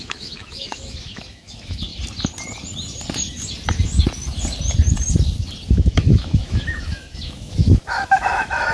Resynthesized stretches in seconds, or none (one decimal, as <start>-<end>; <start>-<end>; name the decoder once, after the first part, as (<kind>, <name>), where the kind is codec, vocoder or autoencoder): 0.0-1.9 (autoencoder, DAC-VAE); 5.7-8.7